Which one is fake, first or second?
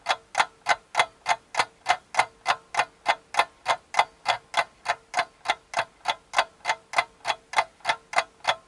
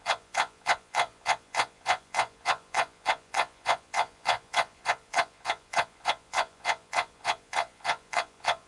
second